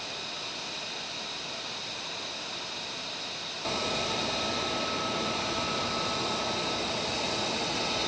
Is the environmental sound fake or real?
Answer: real